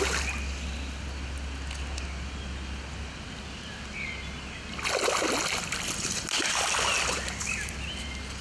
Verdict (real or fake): real